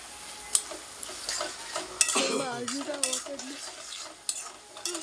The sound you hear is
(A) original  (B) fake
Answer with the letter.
A